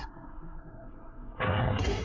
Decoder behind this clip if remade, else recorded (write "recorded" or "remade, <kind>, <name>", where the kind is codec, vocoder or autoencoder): remade, codec, SNAC